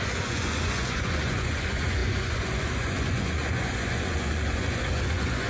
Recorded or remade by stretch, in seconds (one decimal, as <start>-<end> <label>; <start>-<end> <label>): 0.0-5.5 remade